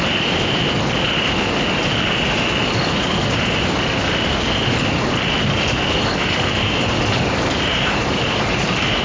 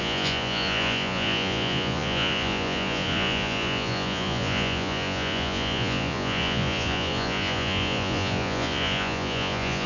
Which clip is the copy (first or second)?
second